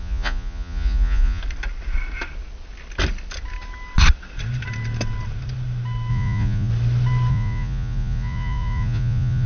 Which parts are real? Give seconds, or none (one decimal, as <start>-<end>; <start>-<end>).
1.4-6.1; 6.7-7.3

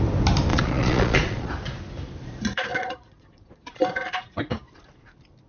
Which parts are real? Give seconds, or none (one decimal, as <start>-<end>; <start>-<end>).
0.0-0.5; 1.5-2.7; 3.7-5.5

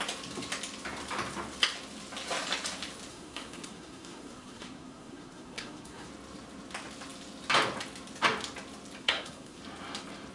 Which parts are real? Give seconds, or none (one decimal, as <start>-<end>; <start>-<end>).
0.0-3.1; 6.1-9.0; 9.6-10.3